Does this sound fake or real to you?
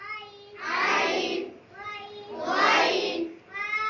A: real